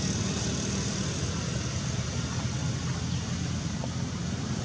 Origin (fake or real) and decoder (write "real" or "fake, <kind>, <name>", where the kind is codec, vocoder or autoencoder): real